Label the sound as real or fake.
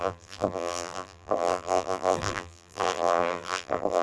fake